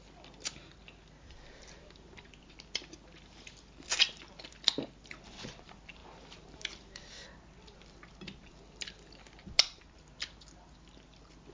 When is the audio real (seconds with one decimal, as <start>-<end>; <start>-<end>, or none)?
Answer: 0.0-11.5